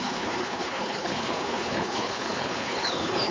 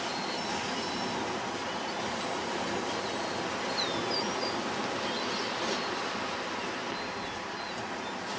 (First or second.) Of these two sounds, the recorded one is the second